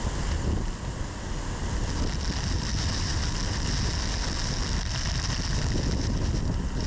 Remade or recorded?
recorded